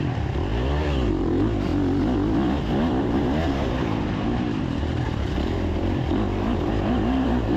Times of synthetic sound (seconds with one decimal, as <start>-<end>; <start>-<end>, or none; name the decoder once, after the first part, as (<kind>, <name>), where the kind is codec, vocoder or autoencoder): 0.0-1.7 (vocoder, BigVGAN v2); 3.0-7.6